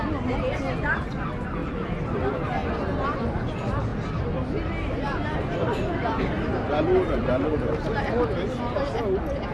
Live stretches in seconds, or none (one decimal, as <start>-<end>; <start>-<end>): 0.0-9.5